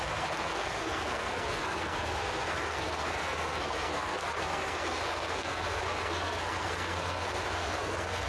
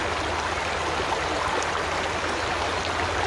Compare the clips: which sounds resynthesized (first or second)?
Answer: first